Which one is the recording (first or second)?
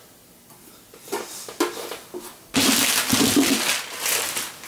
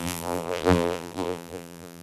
first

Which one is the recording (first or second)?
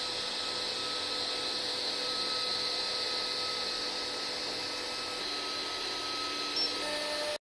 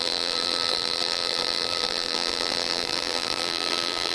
first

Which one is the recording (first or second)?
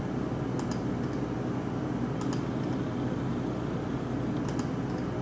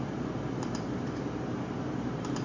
first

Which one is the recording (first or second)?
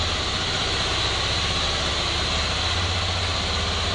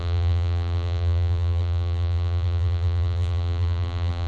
first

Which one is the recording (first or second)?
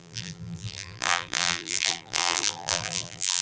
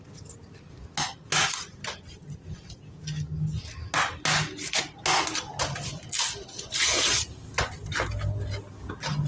second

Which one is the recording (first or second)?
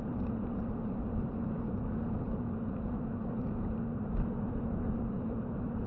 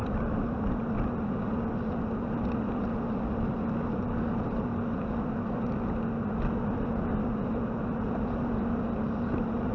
second